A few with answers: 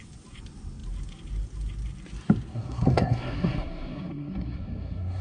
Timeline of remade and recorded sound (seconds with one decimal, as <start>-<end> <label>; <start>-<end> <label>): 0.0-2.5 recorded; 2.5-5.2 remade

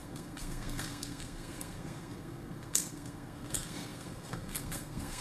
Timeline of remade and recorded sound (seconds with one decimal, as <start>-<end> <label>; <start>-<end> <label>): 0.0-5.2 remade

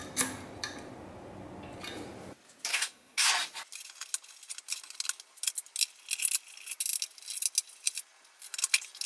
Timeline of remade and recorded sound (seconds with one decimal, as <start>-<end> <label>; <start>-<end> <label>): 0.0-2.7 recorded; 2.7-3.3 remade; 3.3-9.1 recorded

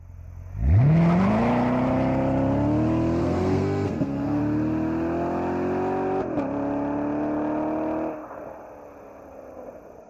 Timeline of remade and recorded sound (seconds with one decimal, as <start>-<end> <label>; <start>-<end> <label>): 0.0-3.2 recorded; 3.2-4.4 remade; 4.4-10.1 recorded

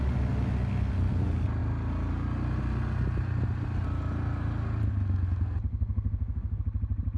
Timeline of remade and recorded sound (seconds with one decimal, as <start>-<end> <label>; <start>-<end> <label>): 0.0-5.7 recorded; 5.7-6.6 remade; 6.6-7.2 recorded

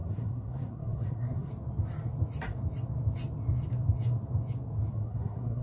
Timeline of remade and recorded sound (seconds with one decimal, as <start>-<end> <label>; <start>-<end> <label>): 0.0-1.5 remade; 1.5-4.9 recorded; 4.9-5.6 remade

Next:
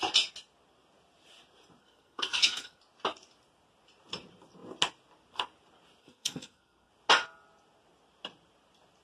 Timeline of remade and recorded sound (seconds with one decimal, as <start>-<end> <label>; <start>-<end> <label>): 0.0-1.8 recorded; 1.8-2.8 remade; 2.8-6.0 recorded; 6.0-6.9 remade; 6.9-9.0 recorded

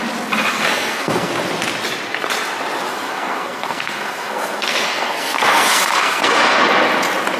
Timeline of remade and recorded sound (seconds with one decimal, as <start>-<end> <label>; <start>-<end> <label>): 0.0-0.5 recorded; 0.5-1.3 remade; 1.3-2.9 recorded; 2.9-6.6 remade; 6.6-7.4 recorded